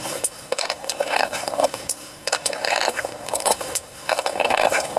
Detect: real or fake fake